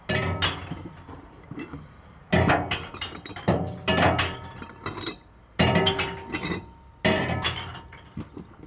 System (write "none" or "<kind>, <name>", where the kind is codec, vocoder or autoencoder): none